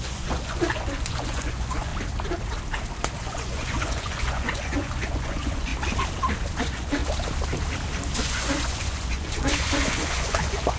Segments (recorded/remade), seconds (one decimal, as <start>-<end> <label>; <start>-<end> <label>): 0.0-1.9 remade; 1.9-3.2 recorded; 3.2-5.7 remade; 5.7-6.6 recorded; 6.6-7.0 remade; 7.0-8.2 recorded; 8.2-10.8 remade